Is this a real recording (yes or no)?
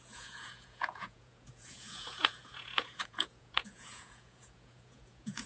no